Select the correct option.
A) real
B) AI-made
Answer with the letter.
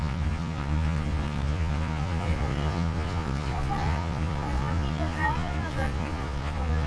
B